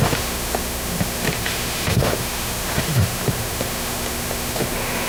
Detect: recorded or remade remade